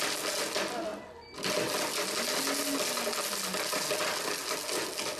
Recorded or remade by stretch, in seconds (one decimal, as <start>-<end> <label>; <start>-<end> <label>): 0.0-5.2 recorded